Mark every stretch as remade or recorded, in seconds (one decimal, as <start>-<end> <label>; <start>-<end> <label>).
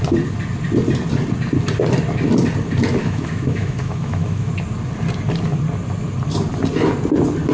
0.0-3.0 recorded; 3.0-4.5 remade; 4.5-7.5 recorded